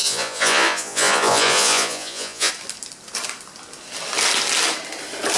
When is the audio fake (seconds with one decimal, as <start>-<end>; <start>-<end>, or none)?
0.0-2.5

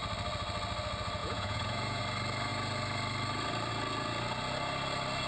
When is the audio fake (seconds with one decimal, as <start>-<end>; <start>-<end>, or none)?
1.2-2.0